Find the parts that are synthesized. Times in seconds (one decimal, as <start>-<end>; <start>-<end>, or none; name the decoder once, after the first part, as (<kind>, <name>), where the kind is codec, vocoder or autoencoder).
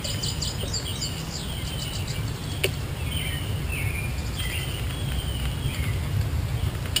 none